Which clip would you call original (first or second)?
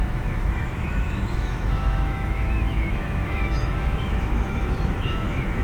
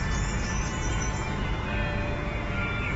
second